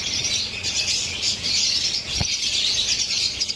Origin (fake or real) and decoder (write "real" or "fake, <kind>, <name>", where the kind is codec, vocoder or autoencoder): fake, vocoder, Vocos